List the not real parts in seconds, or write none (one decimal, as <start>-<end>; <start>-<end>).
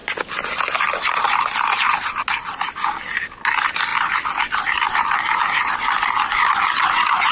3.9-5.9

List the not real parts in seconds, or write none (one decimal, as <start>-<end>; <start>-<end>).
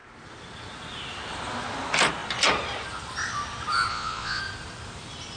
3.9-4.4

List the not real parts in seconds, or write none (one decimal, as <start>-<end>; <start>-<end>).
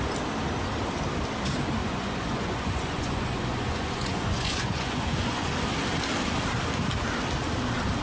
1.8-5.5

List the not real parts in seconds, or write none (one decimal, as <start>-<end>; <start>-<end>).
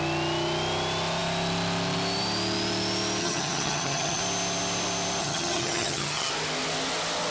3.2-4.2; 5.2-6.3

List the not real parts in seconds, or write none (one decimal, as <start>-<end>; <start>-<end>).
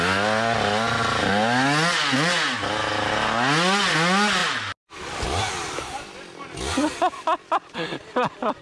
none